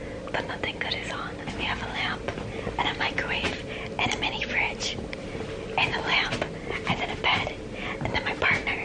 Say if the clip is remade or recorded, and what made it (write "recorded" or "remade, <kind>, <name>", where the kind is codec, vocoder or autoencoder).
recorded